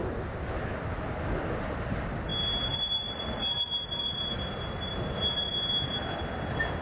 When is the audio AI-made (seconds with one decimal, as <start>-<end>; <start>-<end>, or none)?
none